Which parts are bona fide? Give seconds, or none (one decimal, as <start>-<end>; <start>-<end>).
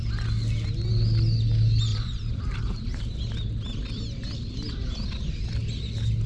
0.0-1.9; 3.1-6.3